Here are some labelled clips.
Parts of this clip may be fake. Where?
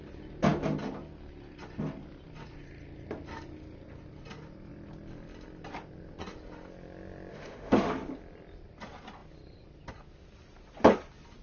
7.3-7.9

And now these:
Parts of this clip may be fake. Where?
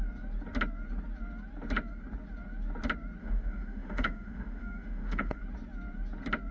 3.2-5.4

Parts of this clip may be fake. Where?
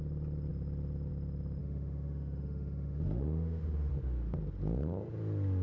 1.6-3.9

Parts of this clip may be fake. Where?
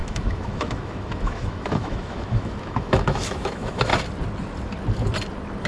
0.0-3.9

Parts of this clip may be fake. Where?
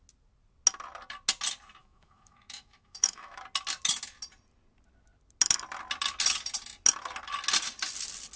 1.8-3.4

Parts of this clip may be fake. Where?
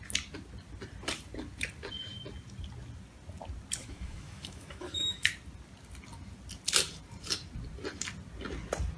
3.8-5.3